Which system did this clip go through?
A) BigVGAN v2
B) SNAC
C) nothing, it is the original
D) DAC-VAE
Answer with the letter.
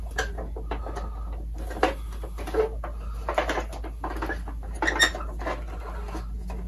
C